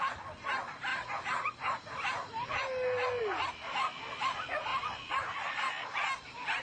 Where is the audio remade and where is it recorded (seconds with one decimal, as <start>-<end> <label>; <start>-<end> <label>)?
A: 0.0-6.6 recorded